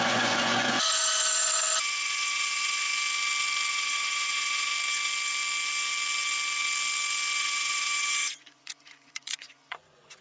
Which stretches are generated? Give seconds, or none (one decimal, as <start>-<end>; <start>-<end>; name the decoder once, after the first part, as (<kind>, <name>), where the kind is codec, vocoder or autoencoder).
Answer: 0.0-2.9 (vocoder, Vocos); 3.7-4.7; 7.4-10.2